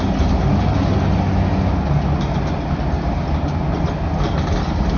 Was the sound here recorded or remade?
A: recorded